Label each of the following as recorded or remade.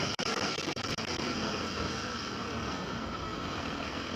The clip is remade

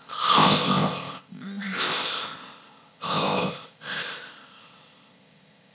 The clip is remade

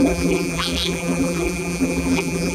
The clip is remade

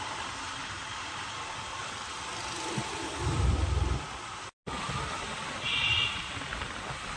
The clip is recorded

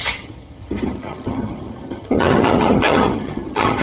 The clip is remade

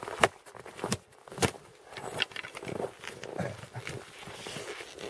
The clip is recorded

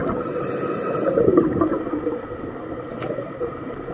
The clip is remade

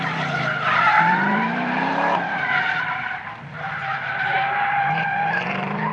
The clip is remade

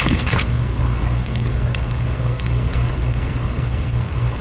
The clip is remade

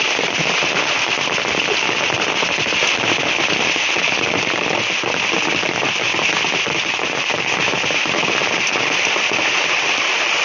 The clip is remade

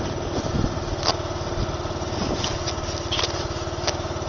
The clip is recorded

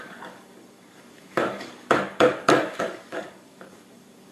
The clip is remade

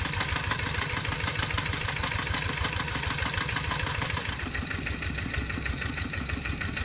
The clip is remade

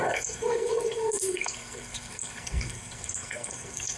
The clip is remade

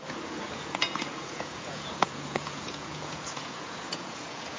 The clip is remade